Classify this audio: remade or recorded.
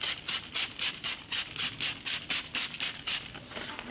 recorded